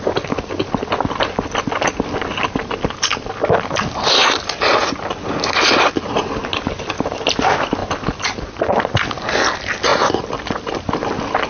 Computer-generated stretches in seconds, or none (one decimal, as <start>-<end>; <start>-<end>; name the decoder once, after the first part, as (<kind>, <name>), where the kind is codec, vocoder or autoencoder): none